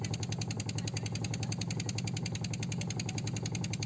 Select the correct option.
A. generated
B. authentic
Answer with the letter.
B